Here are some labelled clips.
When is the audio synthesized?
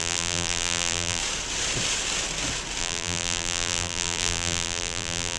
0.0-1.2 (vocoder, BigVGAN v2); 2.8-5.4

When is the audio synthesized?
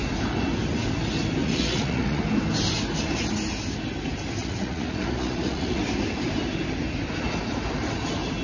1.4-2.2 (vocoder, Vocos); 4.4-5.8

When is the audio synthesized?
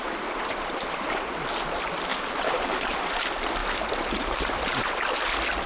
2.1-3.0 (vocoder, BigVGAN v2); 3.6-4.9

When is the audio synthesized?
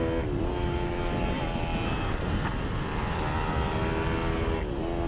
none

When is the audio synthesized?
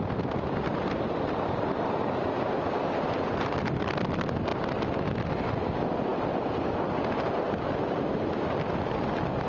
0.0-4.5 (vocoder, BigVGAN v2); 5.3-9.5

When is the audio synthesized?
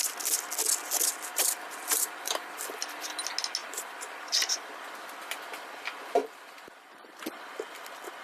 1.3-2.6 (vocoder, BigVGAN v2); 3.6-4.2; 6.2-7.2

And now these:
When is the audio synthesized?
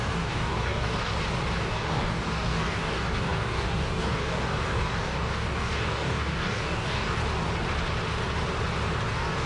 0.0-1.1 (codec, DAC); 1.6-7.2; 9.1-9.5